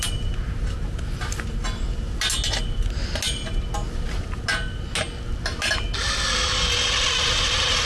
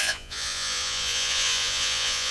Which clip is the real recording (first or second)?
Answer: first